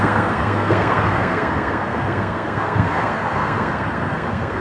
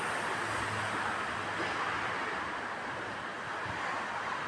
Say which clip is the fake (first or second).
first